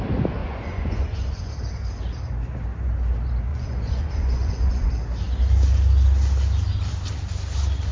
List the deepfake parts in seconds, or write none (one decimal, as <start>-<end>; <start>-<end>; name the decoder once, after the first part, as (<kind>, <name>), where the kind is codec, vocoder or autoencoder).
0.4-1.5 (vocoder, Vocos); 3.5-4.9

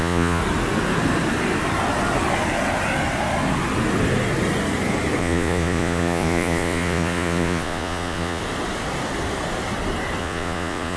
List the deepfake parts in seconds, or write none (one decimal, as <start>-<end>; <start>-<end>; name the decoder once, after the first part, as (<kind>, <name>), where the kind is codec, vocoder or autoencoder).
0.0-0.4 (vocoder, Vocos); 5.2-8.4; 10.2-11.0

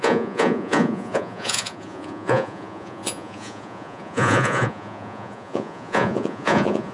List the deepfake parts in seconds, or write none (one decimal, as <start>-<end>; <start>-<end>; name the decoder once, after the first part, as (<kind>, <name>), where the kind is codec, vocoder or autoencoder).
0.0-6.9 (vocoder, Vocos)

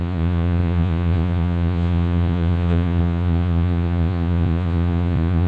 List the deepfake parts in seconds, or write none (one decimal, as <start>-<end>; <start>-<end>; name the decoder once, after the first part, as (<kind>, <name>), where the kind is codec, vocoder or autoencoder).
0.0-5.5 (vocoder, Vocos)

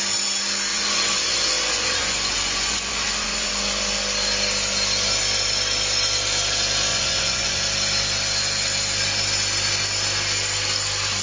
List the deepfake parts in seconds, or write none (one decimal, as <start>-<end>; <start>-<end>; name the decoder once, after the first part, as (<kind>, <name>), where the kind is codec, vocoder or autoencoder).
0.7-3.5 (vocoder, Vocos); 6.9-7.6